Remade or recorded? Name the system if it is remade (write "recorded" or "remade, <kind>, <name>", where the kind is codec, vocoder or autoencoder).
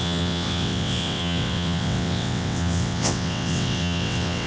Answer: remade, vocoder, WaveNeXt